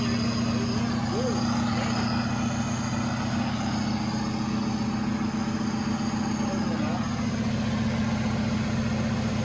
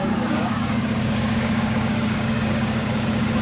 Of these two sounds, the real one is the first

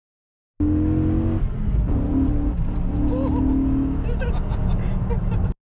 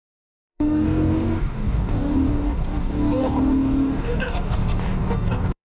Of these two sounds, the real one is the first